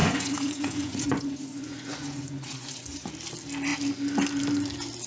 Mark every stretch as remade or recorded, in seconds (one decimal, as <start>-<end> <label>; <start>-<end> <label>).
0.0-3.1 remade; 3.1-5.1 recorded